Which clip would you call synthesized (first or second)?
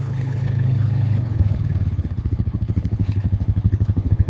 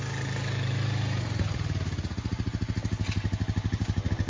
first